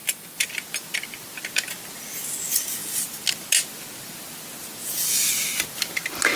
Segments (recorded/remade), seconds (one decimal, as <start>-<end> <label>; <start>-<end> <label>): 0.0-0.5 remade; 0.5-6.4 recorded